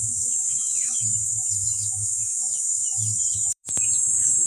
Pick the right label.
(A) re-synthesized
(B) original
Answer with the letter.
A